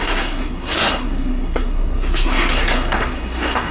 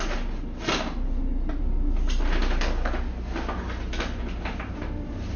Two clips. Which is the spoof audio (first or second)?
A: first